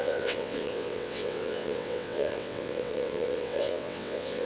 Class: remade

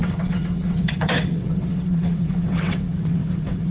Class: remade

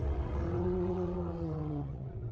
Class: remade